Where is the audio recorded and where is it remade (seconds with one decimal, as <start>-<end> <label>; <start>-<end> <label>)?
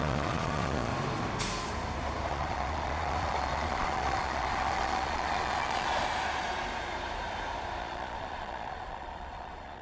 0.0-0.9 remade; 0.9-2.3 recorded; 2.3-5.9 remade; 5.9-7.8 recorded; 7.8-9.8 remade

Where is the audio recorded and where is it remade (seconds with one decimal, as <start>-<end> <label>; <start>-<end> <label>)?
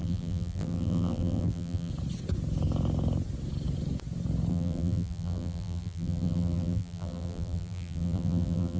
0.0-1.9 remade; 1.9-4.5 recorded; 4.5-8.8 remade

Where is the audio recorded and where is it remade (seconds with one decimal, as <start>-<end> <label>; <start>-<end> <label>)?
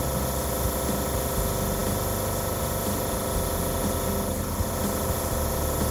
0.0-5.9 recorded